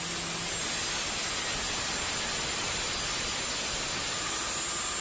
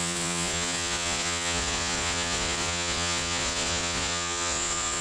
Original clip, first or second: first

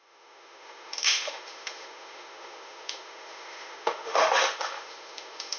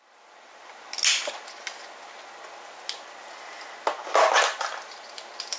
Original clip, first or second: second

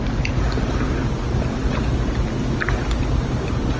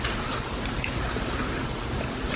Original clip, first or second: first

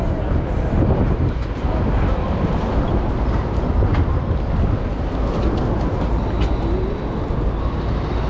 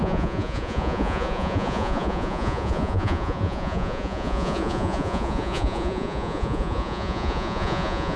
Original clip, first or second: first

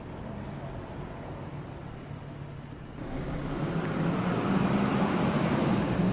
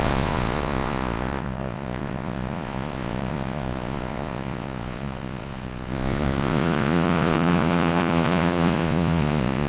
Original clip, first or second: first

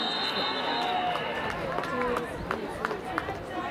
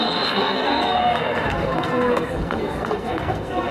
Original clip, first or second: first